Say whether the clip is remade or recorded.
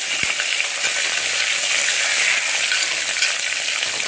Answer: recorded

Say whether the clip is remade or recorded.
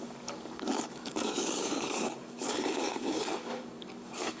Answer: remade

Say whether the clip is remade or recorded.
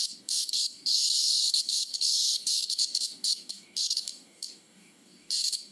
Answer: remade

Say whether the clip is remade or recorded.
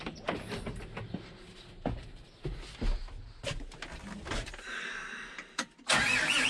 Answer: recorded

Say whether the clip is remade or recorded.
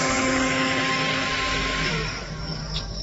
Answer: remade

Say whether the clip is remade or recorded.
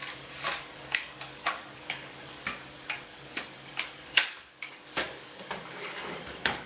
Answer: remade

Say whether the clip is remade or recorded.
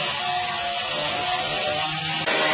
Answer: recorded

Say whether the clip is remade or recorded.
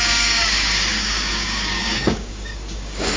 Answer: remade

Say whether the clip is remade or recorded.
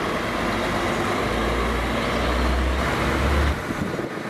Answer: recorded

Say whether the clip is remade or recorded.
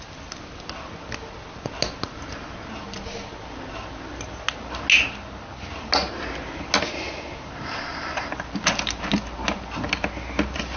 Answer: recorded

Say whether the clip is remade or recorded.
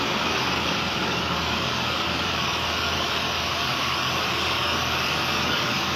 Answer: remade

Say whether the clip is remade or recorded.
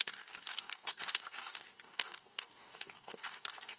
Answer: remade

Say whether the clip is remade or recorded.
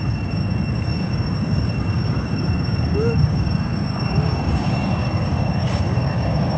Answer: remade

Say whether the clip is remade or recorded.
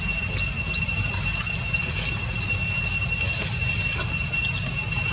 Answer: recorded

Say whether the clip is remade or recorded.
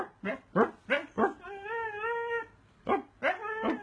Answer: recorded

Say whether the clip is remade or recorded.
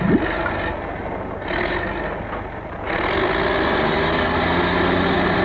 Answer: recorded